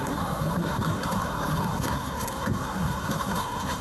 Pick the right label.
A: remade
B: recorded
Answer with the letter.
A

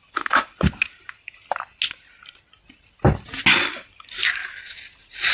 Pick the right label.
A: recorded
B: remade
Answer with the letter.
A